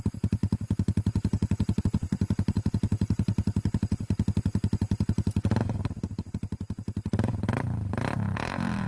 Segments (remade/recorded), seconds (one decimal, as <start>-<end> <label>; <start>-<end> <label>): 0.0-3.3 remade; 3.3-6.3 recorded; 6.3-8.9 remade

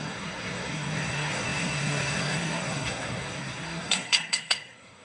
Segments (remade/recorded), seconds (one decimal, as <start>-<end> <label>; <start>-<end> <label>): 0.0-5.0 remade

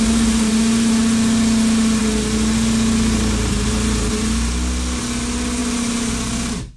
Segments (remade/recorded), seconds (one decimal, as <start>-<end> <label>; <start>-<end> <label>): 0.0-6.8 recorded

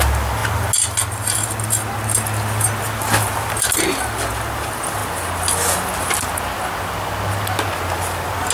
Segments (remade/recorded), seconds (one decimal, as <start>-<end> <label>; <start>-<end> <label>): 0.0-8.5 recorded

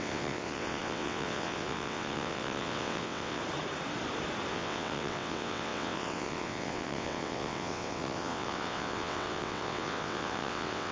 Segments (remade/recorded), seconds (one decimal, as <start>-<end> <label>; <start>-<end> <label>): 0.0-3.4 remade; 3.4-4.5 recorded; 4.5-10.9 remade

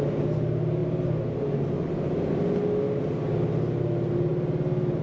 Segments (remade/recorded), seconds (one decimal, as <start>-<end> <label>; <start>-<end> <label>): 0.0-5.0 recorded

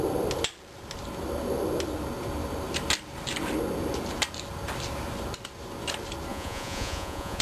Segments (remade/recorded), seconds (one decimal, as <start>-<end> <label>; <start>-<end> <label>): 0.0-6.3 recorded; 6.3-7.4 remade

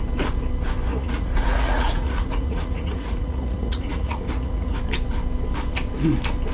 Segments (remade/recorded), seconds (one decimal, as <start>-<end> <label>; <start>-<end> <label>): 0.0-0.9 recorded; 0.9-4.8 remade; 4.8-6.5 recorded